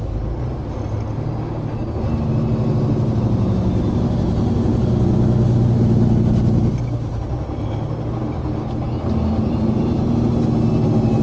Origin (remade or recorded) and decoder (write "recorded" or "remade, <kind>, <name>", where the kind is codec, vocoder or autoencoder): recorded